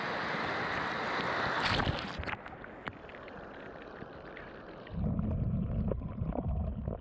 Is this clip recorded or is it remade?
recorded